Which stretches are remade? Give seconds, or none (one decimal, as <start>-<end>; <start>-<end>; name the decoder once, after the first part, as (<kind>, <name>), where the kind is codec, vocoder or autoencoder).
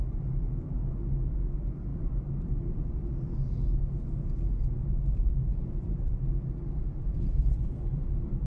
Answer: 4.8-5.9 (vocoder, BigVGAN v2)